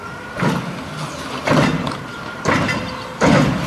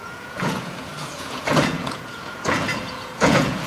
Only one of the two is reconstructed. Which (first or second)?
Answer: second